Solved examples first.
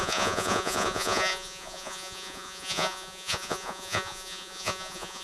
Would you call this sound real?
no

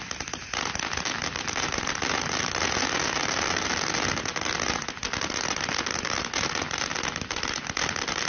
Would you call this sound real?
yes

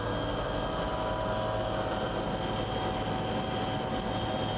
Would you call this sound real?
yes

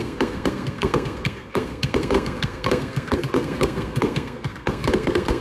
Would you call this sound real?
no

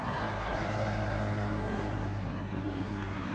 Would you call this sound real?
no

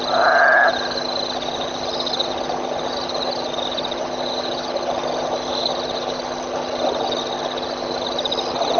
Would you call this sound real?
yes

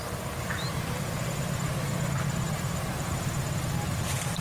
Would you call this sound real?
no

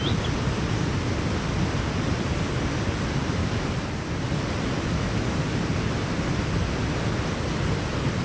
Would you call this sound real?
yes